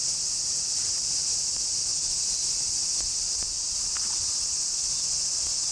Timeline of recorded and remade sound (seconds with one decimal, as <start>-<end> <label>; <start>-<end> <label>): 0.0-5.7 recorded